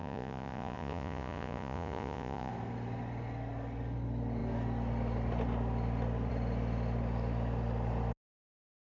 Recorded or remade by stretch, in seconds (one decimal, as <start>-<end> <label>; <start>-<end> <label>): 0.0-2.5 remade; 2.5-8.9 recorded